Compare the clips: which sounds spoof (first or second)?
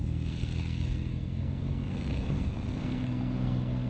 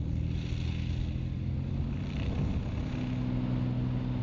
first